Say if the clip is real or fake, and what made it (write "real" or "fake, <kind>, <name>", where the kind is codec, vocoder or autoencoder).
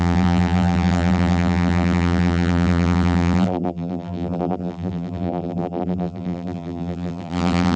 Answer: fake, vocoder, BigVGAN v2